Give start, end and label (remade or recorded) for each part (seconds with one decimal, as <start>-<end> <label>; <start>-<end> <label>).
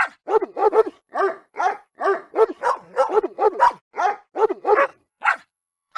0.0-0.6 recorded; 0.6-3.6 remade; 3.6-4.9 recorded; 4.9-6.0 remade